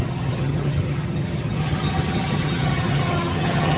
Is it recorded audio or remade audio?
remade